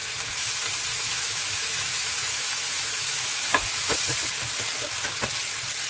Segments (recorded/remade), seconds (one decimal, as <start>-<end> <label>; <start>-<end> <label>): 0.0-0.5 remade; 0.5-0.9 recorded; 0.9-3.9 remade; 3.9-5.9 recorded